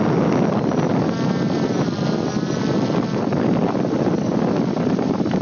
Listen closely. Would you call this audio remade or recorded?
recorded